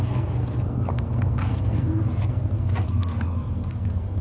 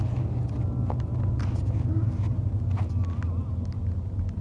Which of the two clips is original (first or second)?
second